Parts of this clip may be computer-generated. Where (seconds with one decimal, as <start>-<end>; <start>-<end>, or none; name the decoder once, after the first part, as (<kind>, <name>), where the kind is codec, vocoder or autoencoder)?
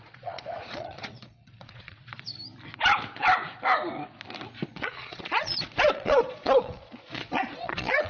0.0-2.3 (vocoder, Vocos); 4.7-8.1